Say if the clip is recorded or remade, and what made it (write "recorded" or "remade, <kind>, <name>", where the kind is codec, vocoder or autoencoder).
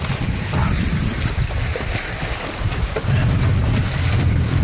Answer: recorded